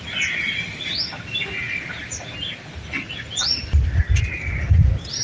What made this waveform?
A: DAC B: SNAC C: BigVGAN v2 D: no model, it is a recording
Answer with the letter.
D